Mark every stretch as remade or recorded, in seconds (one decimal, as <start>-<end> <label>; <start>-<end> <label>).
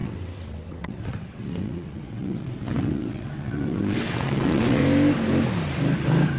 0.0-4.8 remade; 4.8-6.4 recorded